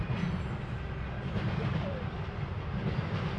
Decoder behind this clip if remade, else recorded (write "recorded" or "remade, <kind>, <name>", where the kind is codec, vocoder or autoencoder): recorded